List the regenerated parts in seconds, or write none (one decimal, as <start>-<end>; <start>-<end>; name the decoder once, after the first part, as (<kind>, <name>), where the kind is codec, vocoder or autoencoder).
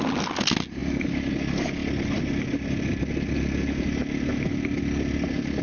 none